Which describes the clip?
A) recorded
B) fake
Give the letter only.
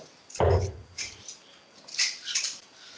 B